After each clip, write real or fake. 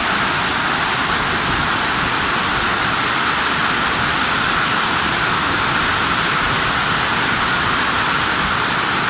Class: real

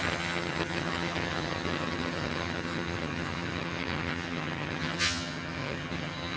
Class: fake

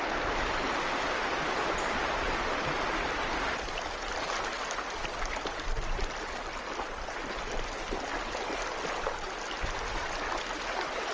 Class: real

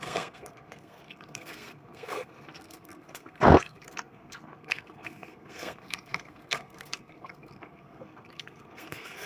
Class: fake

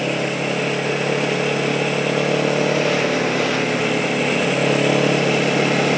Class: real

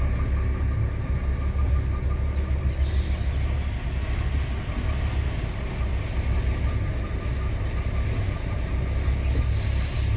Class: real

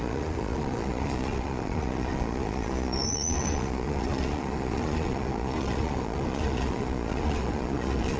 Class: fake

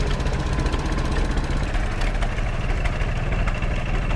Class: real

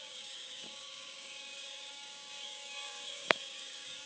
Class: fake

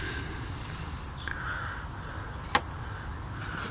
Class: real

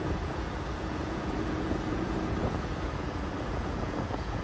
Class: fake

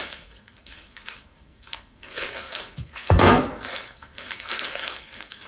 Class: fake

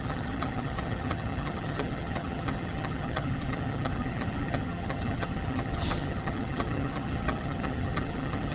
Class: fake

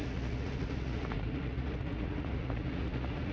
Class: fake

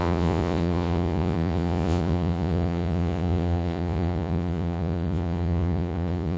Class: fake